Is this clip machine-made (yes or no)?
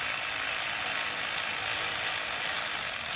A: no